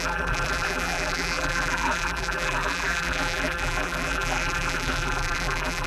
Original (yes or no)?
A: no